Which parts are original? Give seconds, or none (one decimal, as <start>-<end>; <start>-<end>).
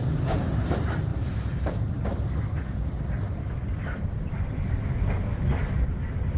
0.0-1.1; 1.7-6.4